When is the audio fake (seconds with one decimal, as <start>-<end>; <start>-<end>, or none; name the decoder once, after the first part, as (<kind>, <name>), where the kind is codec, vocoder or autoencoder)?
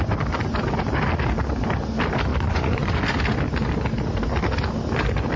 2.3-3.0 (vocoder, Vocos)